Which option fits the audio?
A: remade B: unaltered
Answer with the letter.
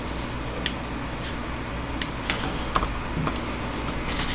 B